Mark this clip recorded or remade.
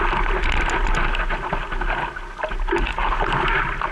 recorded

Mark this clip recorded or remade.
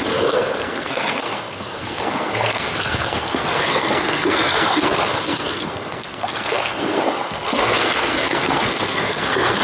remade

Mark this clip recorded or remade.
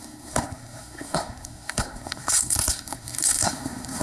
remade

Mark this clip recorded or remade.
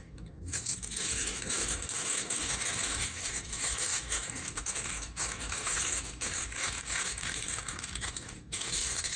remade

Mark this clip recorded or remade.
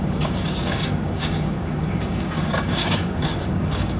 remade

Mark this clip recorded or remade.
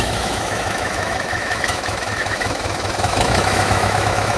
remade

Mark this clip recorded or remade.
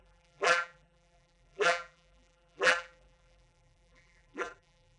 remade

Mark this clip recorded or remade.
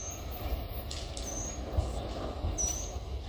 recorded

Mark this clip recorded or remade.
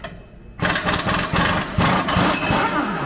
recorded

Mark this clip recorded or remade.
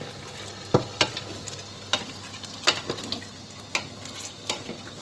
recorded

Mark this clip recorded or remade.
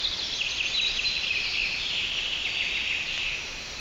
recorded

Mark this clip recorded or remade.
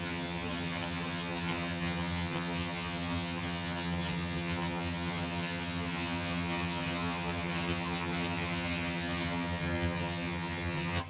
remade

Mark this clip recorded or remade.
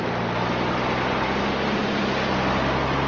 recorded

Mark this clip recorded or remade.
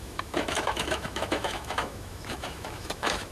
remade